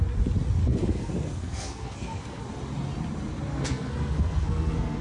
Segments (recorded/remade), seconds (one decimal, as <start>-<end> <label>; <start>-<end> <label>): 0.0-0.6 recorded; 0.6-2.4 remade; 2.4-3.5 recorded; 3.5-5.0 remade